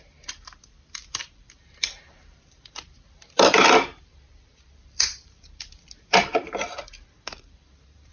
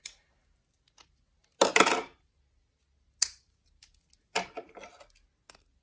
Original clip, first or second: second